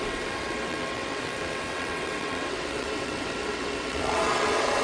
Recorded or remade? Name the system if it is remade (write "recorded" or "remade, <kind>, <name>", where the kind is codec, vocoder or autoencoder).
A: remade, vocoder, WaveNeXt